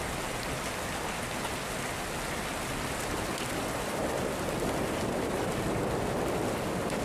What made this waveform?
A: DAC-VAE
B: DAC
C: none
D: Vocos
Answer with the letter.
C